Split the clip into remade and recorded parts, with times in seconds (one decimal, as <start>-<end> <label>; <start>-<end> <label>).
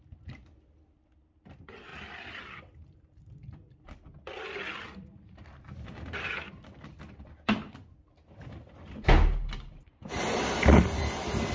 0.0-11.5 recorded